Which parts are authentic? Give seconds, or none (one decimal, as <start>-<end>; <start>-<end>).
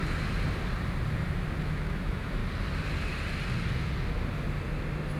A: 0.0-1.6; 2.4-5.2